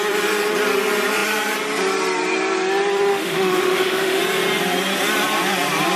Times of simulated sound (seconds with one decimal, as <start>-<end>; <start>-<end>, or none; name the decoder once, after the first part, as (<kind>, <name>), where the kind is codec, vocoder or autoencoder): 3.1-4.2 (autoencoder, DAC-VAE)